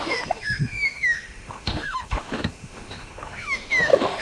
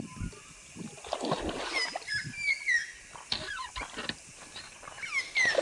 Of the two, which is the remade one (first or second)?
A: first